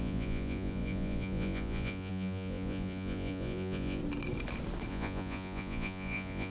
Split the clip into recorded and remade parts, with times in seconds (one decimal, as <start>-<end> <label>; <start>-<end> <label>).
0.0-4.0 remade; 4.0-4.9 recorded; 4.9-6.5 remade